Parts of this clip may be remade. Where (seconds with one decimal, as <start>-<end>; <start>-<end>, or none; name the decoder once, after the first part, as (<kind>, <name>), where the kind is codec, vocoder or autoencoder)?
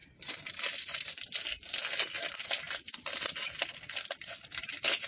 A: none